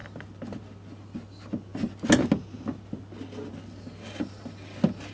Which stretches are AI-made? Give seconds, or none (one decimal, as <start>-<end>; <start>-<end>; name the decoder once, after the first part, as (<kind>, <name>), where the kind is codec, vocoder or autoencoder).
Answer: none